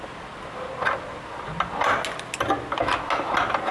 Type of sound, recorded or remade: recorded